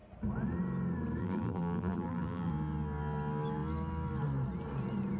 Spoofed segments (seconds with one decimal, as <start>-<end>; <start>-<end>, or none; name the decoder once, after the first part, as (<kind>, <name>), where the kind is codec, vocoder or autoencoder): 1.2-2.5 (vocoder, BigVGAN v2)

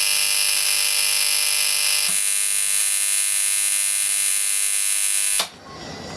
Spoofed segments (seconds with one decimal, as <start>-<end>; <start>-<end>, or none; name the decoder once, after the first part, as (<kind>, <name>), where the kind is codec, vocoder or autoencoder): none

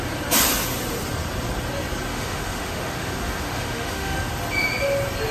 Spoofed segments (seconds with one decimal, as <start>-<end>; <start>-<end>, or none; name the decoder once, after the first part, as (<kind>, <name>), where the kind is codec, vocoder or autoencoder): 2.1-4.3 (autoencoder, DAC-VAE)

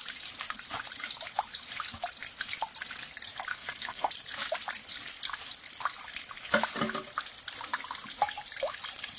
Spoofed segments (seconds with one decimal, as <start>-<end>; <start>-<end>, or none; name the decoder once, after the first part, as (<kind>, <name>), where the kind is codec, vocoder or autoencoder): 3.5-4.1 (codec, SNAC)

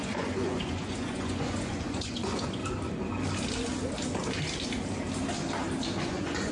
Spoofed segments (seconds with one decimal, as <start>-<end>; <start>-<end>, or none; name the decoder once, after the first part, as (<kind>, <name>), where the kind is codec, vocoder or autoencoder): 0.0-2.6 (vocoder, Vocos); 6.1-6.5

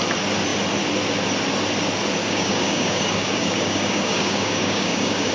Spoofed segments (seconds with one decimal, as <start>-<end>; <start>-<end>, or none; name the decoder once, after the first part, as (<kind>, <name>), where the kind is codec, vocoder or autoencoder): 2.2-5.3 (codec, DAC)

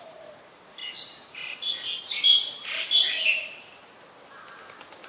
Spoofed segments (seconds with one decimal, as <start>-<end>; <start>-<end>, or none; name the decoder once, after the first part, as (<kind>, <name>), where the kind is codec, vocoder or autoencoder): 0.8-3.9 (vocoder, BigVGAN v2)

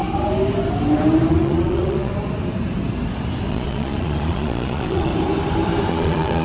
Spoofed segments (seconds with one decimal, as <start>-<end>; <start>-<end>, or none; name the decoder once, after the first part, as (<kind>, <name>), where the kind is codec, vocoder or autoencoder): 1.3-2.1 (vocoder, Vocos); 3.5-5.1; 5.9-6.4